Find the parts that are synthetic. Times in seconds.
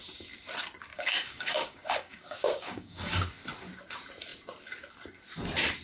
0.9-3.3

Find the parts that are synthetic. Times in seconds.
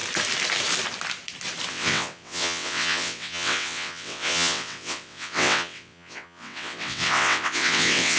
1.7-8.2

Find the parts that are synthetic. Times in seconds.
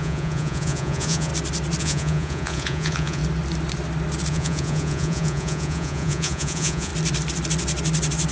0.0-1.3; 1.8-3.2; 4.3-6.9